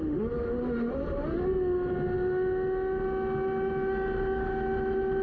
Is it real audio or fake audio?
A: real